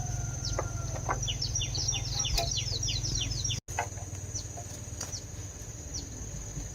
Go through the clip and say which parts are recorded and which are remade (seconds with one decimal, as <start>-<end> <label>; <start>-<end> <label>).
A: 0.0-1.8 remade; 1.8-5.3 recorded; 5.3-6.7 remade

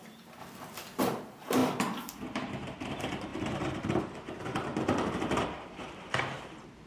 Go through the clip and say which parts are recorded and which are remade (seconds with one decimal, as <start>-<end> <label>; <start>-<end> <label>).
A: 0.0-0.4 remade; 0.4-1.0 recorded; 1.0-4.7 remade; 4.7-5.4 recorded; 5.4-6.9 remade

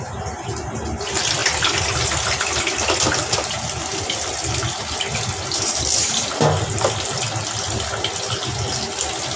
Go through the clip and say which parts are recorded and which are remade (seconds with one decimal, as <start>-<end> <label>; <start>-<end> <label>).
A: 0.0-9.4 recorded

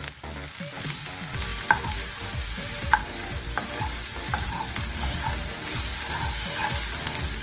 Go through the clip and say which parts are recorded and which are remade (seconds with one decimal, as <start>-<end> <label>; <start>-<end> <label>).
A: 0.0-1.5 recorded; 1.5-5.9 remade; 5.9-7.4 recorded

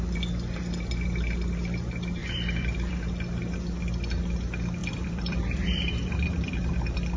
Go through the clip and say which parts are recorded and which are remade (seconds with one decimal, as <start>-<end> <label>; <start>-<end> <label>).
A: 0.0-2.2 recorded; 2.2-2.9 remade; 2.9-4.8 recorded; 4.8-6.7 remade; 6.7-7.2 recorded

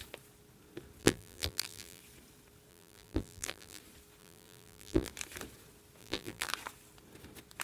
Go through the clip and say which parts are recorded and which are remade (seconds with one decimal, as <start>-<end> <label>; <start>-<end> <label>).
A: 0.0-1.0 recorded; 1.0-2.0 remade; 2.0-2.7 recorded; 2.7-3.8 remade; 3.8-4.2 recorded; 4.2-5.1 remade; 5.1-6.0 recorded; 6.0-6.5 remade; 6.5-7.6 recorded